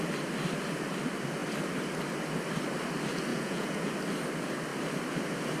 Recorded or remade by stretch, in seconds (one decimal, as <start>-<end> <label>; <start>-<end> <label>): 0.0-3.3 recorded; 3.3-3.9 remade; 3.9-5.6 recorded